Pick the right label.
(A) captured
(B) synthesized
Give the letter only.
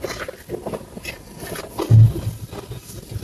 A